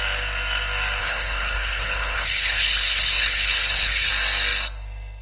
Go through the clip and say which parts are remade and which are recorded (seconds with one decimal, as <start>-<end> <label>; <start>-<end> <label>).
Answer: 0.0-1.0 recorded; 1.0-4.1 remade; 4.1-5.2 recorded